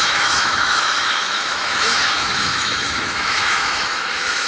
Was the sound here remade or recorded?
remade